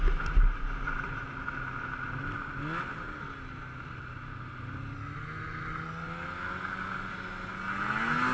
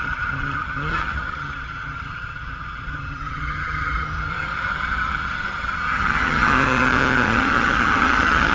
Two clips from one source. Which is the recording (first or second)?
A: first